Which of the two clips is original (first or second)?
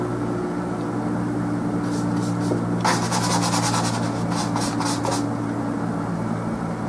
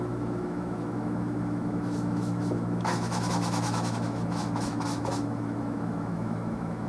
first